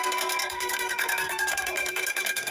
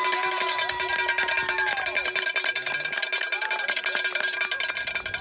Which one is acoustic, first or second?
second